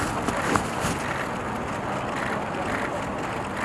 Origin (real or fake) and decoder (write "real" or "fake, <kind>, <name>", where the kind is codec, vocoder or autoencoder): real